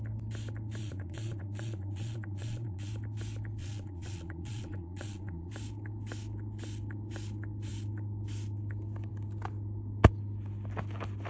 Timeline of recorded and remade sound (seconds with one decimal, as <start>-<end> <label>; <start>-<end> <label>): 0.0-0.8 recorded; 0.8-2.9 remade; 2.9-3.6 recorded; 3.6-5.5 remade; 5.5-11.3 recorded